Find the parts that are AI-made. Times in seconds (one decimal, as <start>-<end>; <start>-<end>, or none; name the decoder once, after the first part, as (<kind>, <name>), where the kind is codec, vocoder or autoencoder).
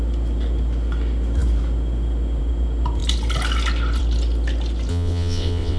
4.9-5.8 (vocoder, WaveNeXt)